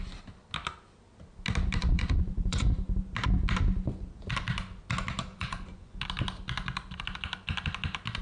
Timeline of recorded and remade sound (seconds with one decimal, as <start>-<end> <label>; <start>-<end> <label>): 0.0-1.8 recorded; 1.8-2.6 remade; 2.6-5.3 recorded; 5.3-6.0 remade; 6.0-8.2 recorded